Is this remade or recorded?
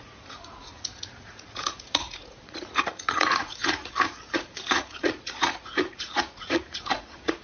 remade